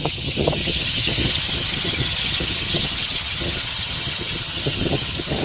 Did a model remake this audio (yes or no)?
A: yes